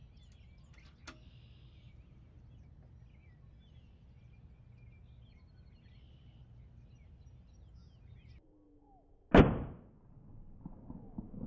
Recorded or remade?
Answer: recorded